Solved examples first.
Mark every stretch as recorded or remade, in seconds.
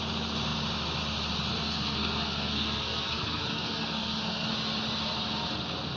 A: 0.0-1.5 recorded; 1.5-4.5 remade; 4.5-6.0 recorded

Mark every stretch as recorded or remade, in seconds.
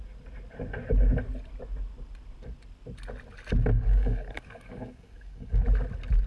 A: 0.0-3.7 recorded; 3.7-5.6 remade; 5.6-6.3 recorded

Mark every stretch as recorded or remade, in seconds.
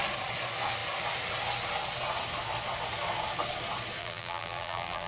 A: 0.0-4.0 recorded; 4.0-5.1 remade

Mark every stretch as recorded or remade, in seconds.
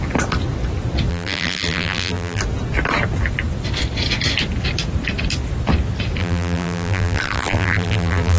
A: 0.0-1.1 recorded; 1.1-2.4 remade; 2.4-6.2 recorded; 6.2-8.4 remade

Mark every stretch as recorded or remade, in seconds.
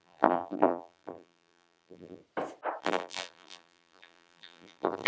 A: 0.0-2.2 remade; 2.2-2.8 recorded; 2.8-5.1 remade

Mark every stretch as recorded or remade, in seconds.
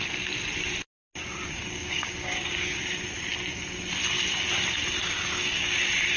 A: 0.0-1.8 recorded; 1.8-2.8 remade; 2.8-5.0 recorded; 5.0-5.8 remade; 5.8-6.2 recorded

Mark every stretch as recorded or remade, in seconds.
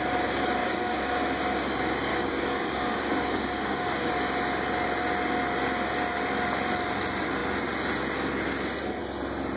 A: 0.0-0.6 recorded; 0.6-1.2 remade; 1.2-2.1 recorded; 2.1-4.1 remade; 4.1-9.6 recorded